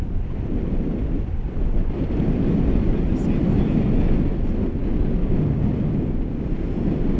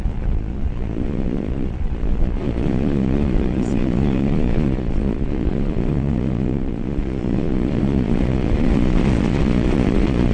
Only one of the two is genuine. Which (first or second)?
first